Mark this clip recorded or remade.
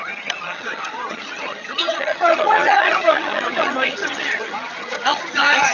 remade